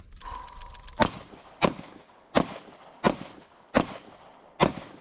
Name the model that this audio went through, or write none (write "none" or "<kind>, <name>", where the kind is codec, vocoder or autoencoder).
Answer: none